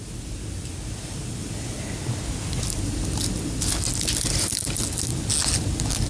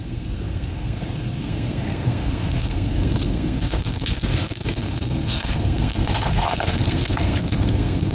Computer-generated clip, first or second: second